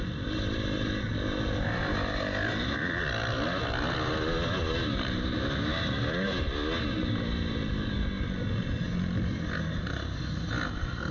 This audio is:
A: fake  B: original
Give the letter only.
B